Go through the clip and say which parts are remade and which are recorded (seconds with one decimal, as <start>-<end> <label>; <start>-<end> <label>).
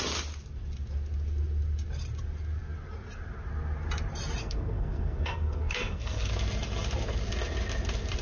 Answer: 0.0-4.4 recorded; 4.4-6.3 remade; 6.3-8.2 recorded